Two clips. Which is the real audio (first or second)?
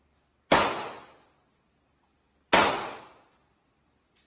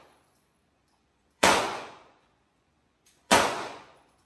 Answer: first